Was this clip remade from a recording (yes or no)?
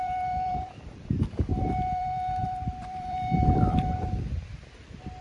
yes